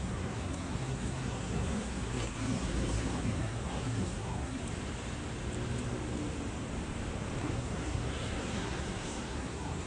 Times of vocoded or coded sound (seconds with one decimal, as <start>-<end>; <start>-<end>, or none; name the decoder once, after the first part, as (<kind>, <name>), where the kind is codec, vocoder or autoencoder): 0.0-4.6 (codec, SNAC); 7.4-9.9